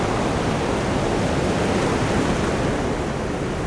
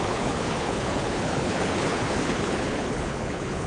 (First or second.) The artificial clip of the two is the second